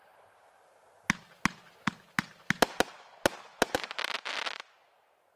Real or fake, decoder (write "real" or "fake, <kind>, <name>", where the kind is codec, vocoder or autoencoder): real